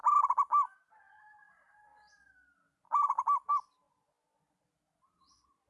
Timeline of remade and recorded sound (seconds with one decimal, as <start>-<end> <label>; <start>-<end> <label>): 0.0-5.7 recorded